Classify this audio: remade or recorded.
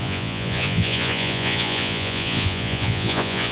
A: remade